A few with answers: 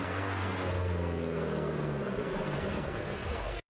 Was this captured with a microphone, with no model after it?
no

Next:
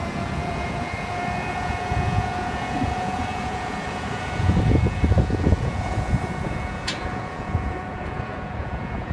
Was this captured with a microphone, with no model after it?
no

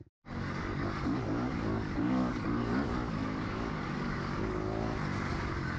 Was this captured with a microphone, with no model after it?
no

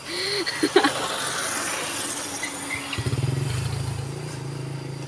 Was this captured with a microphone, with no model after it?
yes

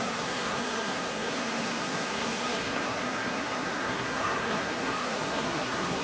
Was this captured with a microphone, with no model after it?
no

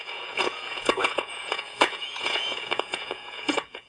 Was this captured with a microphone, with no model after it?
no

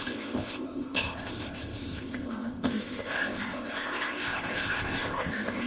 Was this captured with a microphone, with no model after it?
no